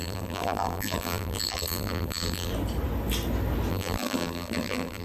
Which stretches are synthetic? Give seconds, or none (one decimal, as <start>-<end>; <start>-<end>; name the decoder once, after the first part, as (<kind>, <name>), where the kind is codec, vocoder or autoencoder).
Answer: 0.0-2.5 (vocoder, BigVGAN v2); 3.7-5.0